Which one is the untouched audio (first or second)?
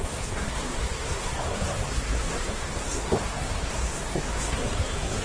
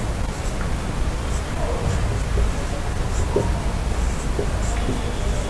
second